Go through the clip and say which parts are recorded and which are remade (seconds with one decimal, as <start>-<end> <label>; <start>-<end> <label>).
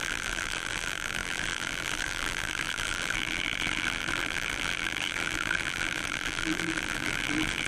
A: 0.0-7.7 remade